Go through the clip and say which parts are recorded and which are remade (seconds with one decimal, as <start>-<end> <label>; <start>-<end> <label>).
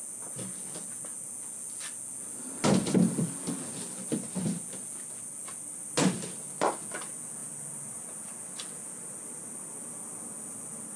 0.0-11.0 recorded